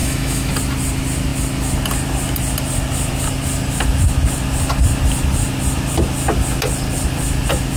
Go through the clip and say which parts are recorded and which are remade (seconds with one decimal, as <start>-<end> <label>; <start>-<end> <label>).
0.0-0.5 remade; 0.5-7.8 recorded